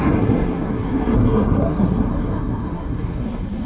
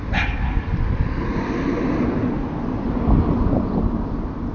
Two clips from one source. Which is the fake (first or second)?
first